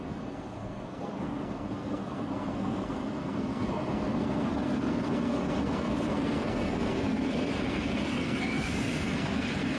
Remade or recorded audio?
remade